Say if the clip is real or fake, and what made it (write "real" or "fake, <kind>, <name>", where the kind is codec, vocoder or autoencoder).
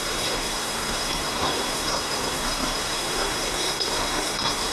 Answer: fake, codec, SNAC